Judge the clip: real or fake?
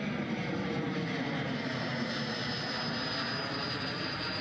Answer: real